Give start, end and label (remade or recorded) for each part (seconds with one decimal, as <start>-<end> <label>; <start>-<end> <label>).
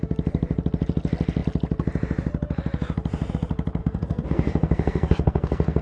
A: 0.0-3.8 recorded; 3.8-5.8 remade